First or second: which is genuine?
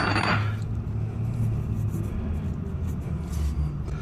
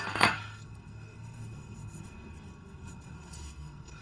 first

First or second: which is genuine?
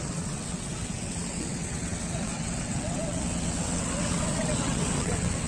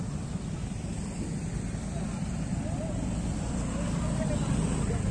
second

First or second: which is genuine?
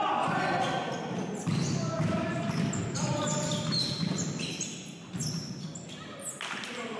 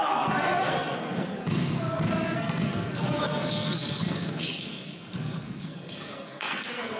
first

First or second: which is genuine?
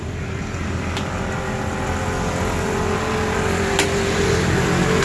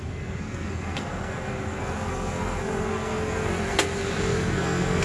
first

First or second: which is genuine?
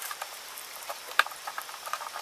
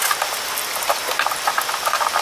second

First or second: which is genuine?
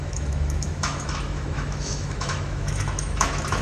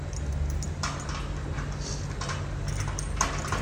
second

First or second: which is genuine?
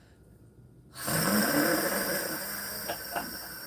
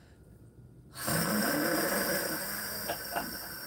first